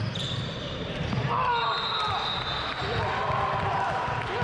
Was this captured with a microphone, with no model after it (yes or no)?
yes